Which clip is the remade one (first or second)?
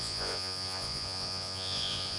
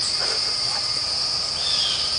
first